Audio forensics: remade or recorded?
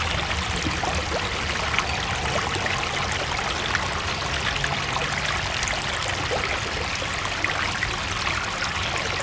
recorded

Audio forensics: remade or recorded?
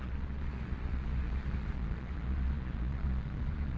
remade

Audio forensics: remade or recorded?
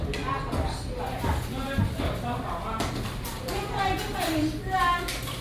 recorded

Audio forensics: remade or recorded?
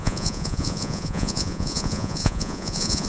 remade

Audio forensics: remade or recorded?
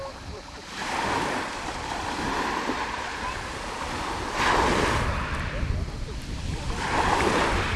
remade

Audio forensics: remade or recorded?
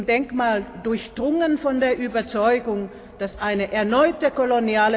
recorded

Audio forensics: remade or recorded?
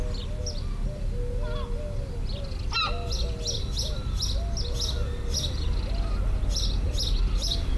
recorded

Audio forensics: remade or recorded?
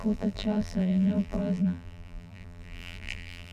remade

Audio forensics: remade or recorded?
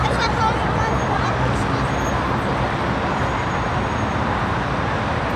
recorded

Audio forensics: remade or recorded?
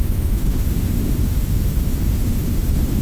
remade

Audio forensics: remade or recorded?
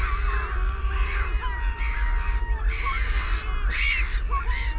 recorded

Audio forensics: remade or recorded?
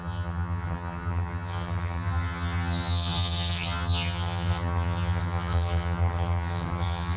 remade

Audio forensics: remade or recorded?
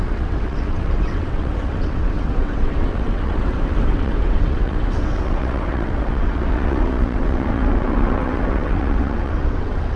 remade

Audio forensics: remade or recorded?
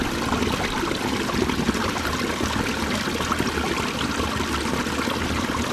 recorded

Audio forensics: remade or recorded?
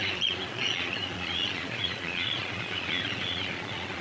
remade